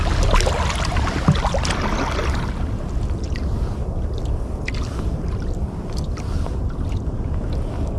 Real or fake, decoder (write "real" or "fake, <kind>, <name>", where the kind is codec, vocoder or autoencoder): real